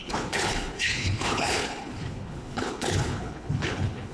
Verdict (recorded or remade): remade